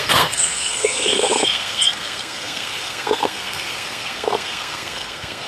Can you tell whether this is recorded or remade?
remade